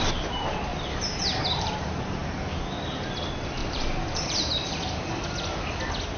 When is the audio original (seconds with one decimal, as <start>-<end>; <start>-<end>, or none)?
0.0-0.7; 1.7-3.6; 4.5-6.2